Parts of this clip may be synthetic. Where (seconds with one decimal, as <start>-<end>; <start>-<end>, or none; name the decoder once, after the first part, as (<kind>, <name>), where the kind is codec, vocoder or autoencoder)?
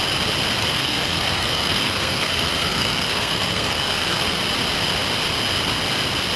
0.6-4.4 (codec, SNAC)